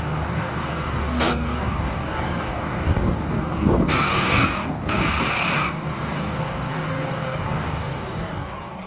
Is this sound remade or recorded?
remade